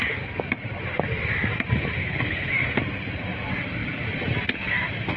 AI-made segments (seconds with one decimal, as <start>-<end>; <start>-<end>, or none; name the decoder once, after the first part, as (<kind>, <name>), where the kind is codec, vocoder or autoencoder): 2.0-2.5 (codec, HILCodec)